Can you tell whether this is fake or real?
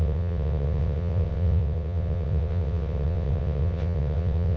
fake